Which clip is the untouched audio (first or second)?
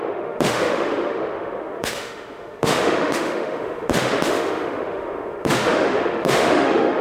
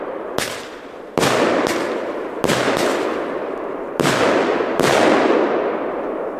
second